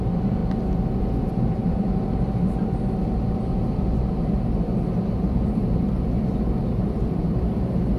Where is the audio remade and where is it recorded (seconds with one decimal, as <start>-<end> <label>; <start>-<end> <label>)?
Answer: 0.0-0.4 remade; 0.4-1.3 recorded; 1.3-8.0 remade